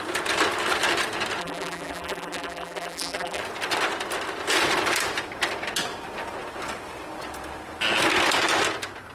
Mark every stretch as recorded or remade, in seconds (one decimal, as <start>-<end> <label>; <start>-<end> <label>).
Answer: 0.0-1.4 recorded; 1.4-3.4 remade; 3.4-9.1 recorded